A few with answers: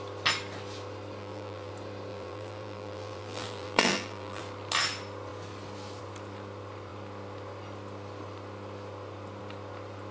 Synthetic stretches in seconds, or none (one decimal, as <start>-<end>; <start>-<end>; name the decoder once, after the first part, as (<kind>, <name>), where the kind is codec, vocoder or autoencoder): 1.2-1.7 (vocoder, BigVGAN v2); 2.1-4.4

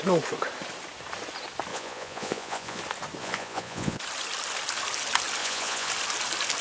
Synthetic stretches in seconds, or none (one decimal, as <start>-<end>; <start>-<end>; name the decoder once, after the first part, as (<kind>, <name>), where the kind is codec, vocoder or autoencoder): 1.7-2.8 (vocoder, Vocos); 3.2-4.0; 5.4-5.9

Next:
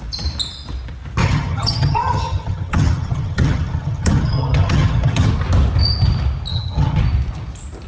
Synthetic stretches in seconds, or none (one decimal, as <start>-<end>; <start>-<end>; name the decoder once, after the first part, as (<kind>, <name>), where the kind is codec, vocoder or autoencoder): 1.2-5.3 (vocoder, HiFi-GAN); 6.5-7.0

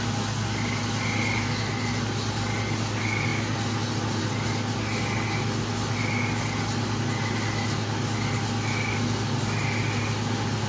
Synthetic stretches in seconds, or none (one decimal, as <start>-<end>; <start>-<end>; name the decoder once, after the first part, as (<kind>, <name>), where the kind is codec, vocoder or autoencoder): none

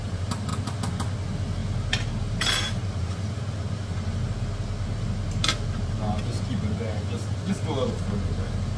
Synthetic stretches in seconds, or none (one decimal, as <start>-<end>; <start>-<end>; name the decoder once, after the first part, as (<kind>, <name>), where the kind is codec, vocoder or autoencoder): none

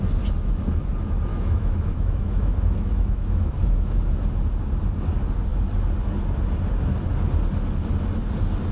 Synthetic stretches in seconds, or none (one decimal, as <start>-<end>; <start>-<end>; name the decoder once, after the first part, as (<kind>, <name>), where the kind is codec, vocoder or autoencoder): 1.3-4.1 (autoencoder, DAC-VAE)

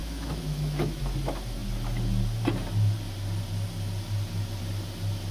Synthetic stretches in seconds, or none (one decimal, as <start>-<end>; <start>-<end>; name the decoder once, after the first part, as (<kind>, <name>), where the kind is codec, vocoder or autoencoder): 0.0-1.0 (autoencoder, DAC-VAE)